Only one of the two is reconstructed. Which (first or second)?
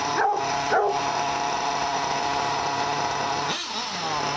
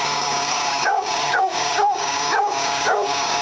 second